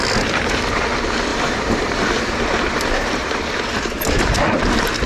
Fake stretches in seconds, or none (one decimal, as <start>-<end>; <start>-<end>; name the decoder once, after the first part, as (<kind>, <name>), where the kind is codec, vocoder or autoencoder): 1.3-4.4 (vocoder, BigVGAN v2)